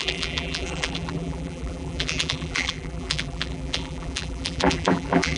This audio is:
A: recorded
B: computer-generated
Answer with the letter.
B